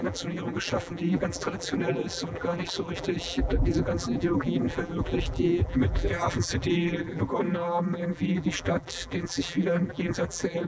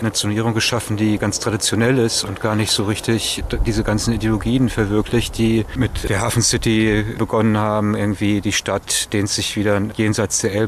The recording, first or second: second